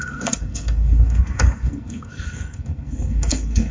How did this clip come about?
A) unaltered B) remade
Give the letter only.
B